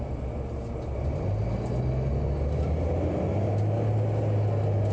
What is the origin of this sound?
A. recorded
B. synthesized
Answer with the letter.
A